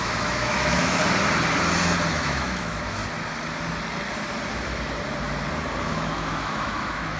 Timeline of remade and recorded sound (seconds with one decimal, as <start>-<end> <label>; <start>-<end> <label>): 0.0-1.0 remade; 1.0-2.1 recorded; 2.1-3.0 remade; 3.0-5.8 recorded; 5.8-7.2 remade